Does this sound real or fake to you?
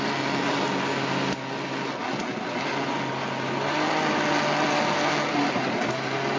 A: real